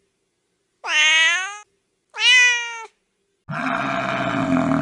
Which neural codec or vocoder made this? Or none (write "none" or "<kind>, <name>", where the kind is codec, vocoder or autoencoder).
none